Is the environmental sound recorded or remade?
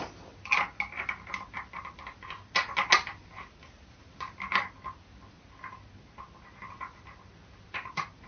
recorded